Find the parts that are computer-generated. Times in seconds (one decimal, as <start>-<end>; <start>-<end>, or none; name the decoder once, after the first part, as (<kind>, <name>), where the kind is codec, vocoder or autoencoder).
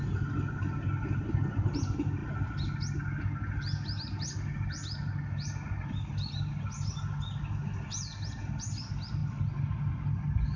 none